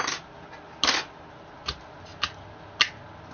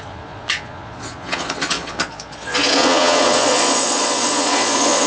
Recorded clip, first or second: first